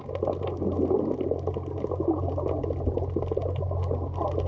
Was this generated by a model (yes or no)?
no